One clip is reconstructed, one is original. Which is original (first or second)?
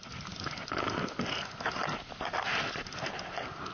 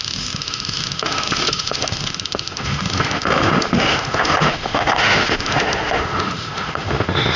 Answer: first